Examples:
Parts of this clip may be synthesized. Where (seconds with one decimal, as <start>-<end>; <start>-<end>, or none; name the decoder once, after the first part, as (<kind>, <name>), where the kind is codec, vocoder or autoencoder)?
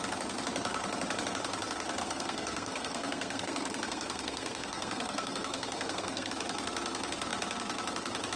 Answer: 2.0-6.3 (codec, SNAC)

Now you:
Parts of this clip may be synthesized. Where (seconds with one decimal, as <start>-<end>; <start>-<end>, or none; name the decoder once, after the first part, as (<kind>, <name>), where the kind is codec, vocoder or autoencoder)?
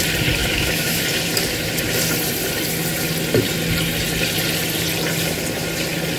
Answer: 0.4-1.0 (autoencoder, DAC-VAE)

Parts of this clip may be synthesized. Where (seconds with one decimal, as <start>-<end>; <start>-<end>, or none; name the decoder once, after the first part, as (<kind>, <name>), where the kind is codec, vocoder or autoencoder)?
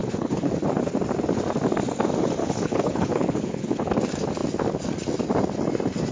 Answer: 0.0-0.6 (codec, HILCodec); 2.4-3.9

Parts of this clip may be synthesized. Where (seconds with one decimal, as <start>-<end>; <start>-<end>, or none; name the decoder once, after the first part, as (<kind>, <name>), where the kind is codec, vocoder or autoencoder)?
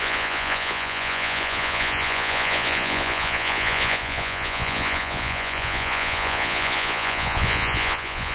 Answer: 0.0-8.3 (vocoder, Vocos)